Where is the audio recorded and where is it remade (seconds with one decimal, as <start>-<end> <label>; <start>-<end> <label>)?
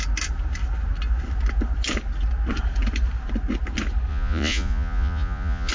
0.0-4.1 recorded; 4.1-5.7 remade